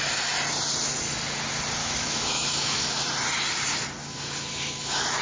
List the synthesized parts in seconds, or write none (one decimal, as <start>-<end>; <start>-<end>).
1.8-3.0; 4.0-5.2